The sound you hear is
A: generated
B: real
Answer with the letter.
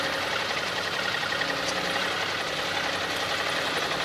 B